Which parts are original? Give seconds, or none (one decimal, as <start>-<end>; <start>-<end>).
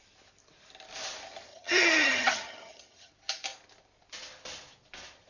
0.0-1.5; 3.1-5.3